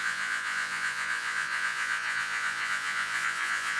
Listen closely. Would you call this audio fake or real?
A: fake